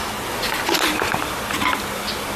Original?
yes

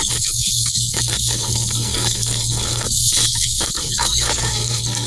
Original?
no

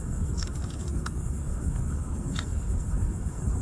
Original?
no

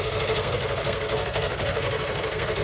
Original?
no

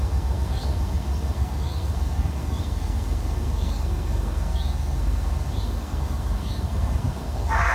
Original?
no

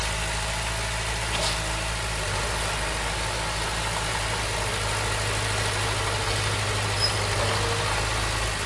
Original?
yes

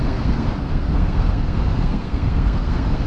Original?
no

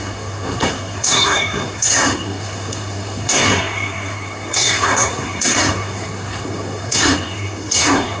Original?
no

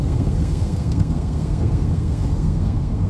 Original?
no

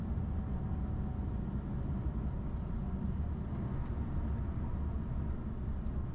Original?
yes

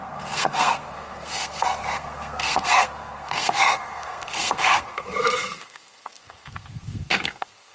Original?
no